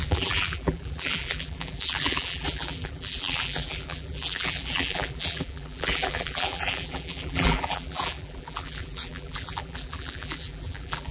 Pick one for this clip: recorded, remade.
remade